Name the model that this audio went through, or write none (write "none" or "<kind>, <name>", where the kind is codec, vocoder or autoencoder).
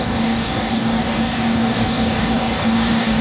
codec, DAC